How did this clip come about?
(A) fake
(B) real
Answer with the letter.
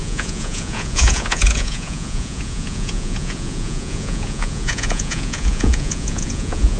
A